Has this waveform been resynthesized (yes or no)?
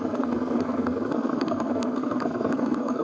yes